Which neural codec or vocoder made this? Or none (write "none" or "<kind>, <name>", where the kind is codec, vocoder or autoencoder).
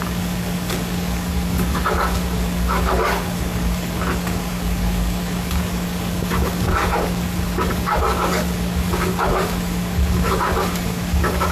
codec, DAC